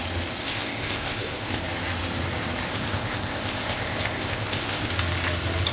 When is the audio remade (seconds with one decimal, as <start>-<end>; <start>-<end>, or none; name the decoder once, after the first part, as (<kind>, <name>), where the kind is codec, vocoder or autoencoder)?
0.4-1.6 (codec, ZipCodec); 2.7-4.9

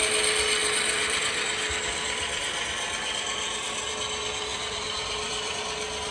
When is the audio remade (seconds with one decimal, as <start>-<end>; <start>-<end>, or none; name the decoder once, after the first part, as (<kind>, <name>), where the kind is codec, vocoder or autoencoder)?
0.6-3.9 (vocoder, BigVGAN v2); 4.5-5.6

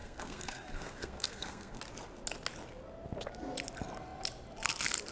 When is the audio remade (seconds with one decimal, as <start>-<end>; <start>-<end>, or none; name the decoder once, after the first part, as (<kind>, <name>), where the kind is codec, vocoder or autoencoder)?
0.0-1.8 (codec, SNAC)

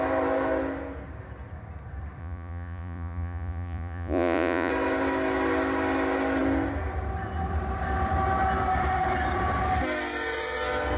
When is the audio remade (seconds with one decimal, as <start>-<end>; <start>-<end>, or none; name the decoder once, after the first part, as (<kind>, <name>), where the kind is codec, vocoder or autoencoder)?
2.2-4.7 (vocoder, Vocos)

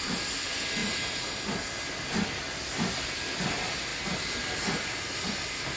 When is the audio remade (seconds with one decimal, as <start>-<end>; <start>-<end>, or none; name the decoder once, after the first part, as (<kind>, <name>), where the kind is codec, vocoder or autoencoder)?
0.8-1.4 (vocoder, Vocos)

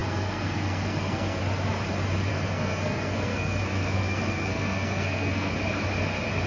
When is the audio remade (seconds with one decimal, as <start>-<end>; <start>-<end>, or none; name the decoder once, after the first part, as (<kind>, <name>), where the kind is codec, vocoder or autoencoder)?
0.0-1.4 (codec, SNAC); 2.3-5.5

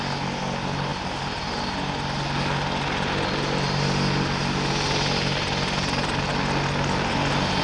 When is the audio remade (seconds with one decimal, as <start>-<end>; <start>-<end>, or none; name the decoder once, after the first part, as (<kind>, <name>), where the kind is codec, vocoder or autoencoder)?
none